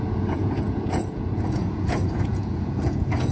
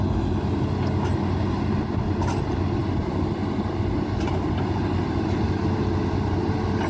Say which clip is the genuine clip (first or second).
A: second